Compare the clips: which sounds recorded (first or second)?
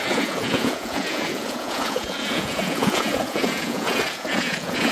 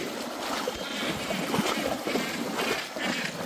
second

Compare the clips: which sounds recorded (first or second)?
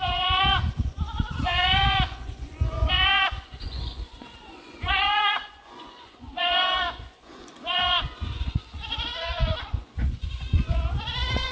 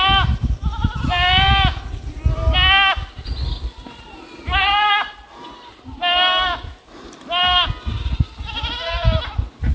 second